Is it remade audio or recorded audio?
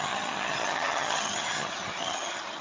remade